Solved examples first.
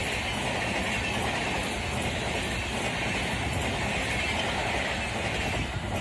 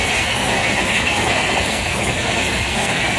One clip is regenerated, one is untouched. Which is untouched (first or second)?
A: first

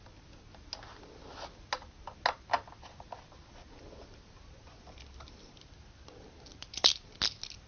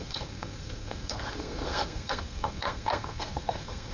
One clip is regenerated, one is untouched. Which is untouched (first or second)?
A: first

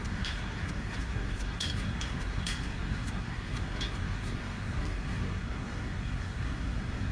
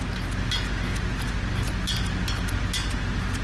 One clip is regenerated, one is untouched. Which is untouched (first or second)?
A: second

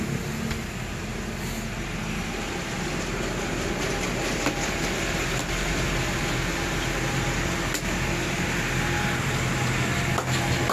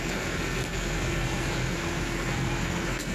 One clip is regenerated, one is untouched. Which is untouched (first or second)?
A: first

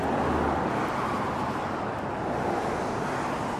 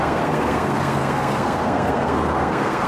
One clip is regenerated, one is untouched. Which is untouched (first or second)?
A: first